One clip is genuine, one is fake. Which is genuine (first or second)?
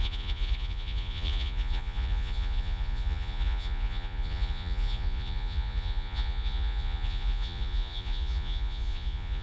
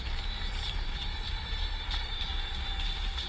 second